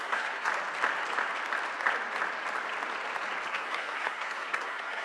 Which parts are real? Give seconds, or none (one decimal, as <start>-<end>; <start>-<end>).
0.5-3.5